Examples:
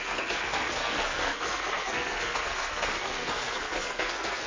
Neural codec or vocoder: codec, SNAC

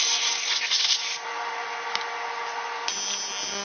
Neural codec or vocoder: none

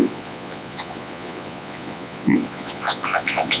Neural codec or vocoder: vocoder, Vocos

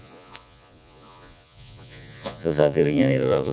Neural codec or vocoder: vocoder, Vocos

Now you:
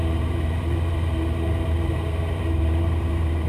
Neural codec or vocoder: vocoder, BigVGAN v2